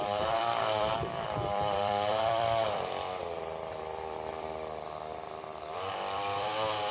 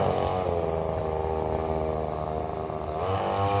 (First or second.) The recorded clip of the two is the second